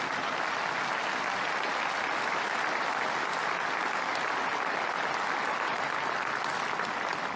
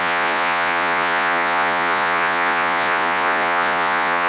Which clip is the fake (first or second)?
second